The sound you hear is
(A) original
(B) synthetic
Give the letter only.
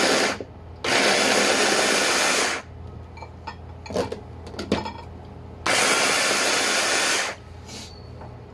A